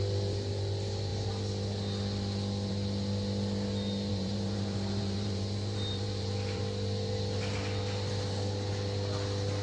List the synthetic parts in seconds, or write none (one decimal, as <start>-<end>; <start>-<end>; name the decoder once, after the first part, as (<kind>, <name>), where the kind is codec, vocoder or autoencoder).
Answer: 4.1-6.6 (vocoder, BigVGAN v2)

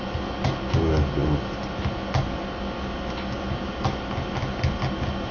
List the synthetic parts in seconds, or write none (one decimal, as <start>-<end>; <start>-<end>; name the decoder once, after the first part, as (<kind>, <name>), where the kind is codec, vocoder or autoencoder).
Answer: none

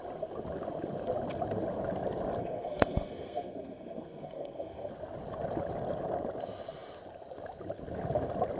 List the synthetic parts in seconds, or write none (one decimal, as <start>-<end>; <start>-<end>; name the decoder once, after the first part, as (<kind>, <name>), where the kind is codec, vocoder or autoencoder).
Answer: 2.4-4.9 (codec, SNAC)

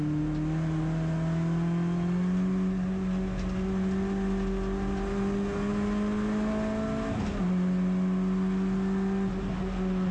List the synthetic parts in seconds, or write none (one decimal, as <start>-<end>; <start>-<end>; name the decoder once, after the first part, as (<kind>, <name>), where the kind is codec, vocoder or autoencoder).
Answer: none

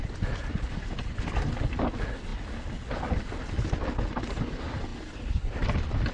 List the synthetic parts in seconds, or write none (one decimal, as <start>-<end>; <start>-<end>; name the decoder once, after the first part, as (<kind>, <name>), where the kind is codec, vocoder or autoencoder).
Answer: none

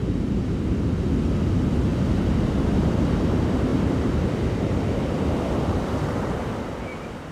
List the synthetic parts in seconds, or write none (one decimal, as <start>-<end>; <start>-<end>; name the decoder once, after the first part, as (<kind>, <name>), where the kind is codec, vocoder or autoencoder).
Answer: 0.0-0.5 (vocoder, BigVGAN v2); 1.9-2.6; 3.7-6.5